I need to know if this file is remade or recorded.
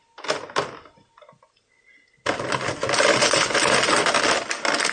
recorded